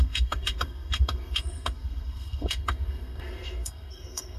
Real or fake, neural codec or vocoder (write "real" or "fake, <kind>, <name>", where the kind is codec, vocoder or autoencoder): fake, codec, SNAC